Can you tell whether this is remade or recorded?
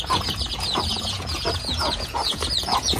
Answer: remade